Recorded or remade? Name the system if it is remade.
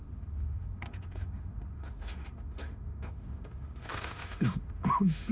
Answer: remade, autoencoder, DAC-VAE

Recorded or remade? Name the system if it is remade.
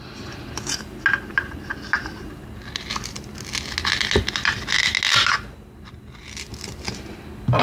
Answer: recorded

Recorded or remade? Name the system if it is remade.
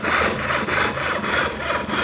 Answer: recorded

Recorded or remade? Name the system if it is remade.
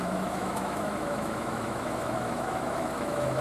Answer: remade, autoencoder, DAC-VAE